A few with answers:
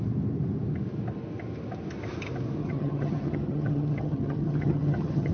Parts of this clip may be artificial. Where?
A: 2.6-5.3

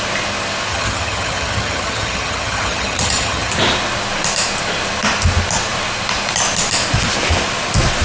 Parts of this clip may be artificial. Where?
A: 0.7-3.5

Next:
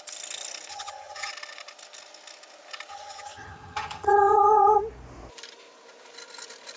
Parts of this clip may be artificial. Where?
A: 0.7-1.3; 2.9-4.8

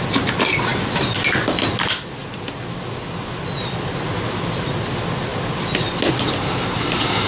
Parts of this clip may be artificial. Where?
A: none